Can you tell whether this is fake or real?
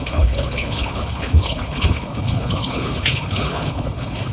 fake